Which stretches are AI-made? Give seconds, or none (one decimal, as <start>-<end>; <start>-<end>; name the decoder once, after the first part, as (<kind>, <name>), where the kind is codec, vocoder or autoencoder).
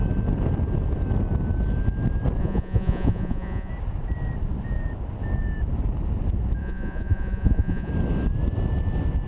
2.4-3.7 (vocoder, Vocos); 6.6-7.9